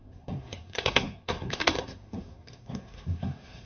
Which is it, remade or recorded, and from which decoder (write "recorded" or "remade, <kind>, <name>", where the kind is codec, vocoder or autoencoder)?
remade, codec, SNAC